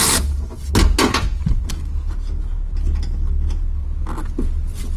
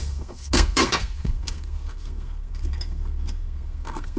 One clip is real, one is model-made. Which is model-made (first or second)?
second